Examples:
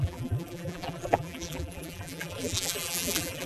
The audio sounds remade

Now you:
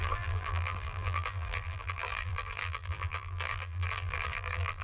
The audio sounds remade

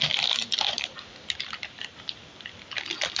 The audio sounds recorded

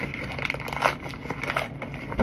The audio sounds recorded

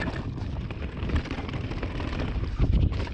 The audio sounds remade